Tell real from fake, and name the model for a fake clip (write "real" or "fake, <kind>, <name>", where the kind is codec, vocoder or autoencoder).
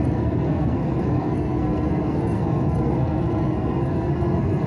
fake, codec, SNAC